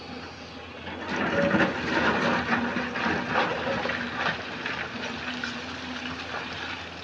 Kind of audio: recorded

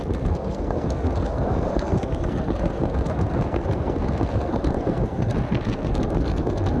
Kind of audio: remade